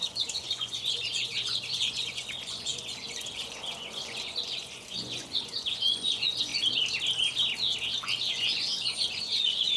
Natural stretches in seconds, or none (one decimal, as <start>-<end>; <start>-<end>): 6.5-8.3

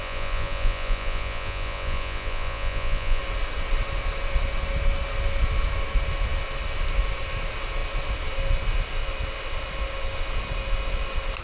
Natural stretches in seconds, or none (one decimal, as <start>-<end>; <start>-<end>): 3.2-11.4

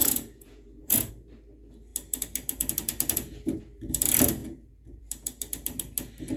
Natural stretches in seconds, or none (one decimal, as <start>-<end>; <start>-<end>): 1.1-4.4; 5.0-6.4

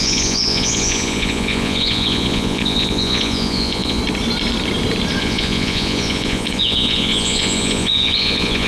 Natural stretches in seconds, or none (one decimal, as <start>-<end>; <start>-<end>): 4.0-5.2

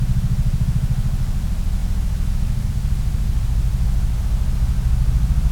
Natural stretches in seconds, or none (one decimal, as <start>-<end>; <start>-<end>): 0.0-5.5